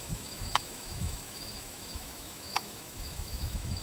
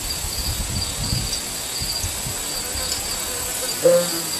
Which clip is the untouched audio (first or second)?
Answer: second